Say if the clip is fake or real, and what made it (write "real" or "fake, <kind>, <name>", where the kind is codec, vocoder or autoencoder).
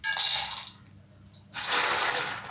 real